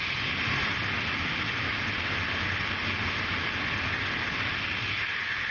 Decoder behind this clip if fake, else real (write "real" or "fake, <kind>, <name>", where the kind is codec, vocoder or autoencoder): real